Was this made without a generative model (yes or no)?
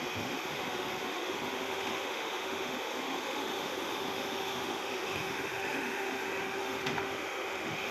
no